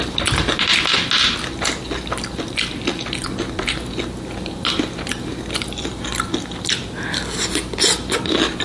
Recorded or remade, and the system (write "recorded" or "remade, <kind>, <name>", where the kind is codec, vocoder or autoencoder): recorded